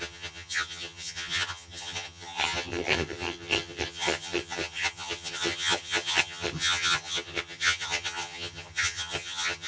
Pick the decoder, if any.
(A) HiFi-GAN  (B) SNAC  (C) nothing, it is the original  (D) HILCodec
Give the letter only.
A